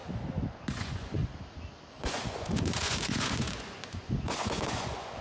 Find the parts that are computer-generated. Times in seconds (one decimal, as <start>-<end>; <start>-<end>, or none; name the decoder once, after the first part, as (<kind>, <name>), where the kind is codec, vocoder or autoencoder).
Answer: 0.7-1.2 (vocoder, Vocos); 1.9-5.2